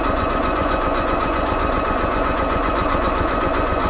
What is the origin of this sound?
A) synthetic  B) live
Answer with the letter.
A